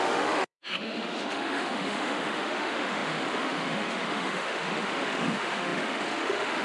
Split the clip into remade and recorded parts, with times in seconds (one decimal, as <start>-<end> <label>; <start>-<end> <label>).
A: 0.0-6.6 remade